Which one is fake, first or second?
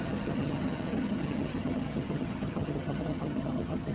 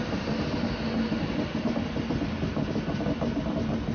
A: first